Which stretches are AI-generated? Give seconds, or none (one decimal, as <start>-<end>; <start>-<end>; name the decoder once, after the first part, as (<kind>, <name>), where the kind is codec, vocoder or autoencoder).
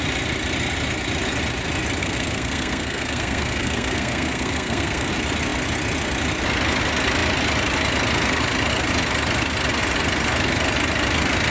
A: 2.0-5.1 (codec, SNAC)